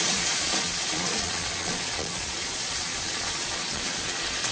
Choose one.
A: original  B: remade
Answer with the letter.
B